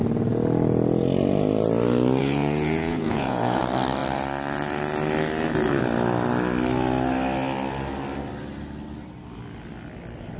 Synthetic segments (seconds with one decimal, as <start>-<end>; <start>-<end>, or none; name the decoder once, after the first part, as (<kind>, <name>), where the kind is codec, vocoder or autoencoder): 2.2-3.6 (vocoder, Vocos)